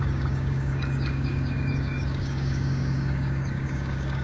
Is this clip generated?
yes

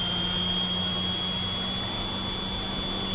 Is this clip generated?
no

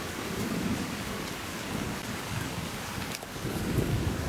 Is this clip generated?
yes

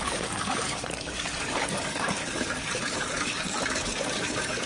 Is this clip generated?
yes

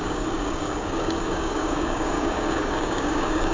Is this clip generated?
yes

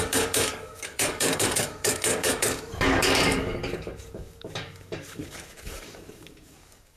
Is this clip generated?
yes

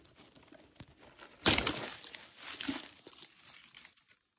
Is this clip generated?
no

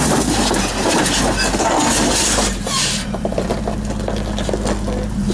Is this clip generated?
no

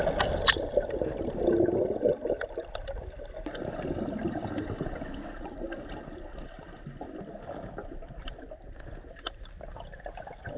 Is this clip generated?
no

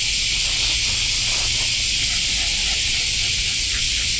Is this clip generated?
no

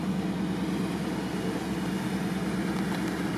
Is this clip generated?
no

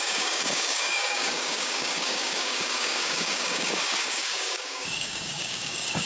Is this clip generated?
yes